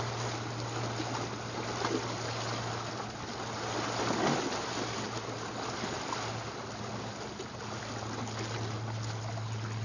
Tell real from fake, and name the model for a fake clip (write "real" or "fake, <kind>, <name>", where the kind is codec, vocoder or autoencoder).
real